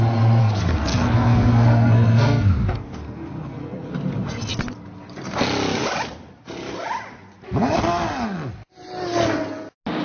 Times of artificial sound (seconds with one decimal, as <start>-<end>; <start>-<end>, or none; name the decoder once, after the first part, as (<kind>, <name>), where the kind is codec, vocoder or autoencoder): 0.4-3.9 (codec, SNAC)